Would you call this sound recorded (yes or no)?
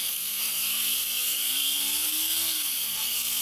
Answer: no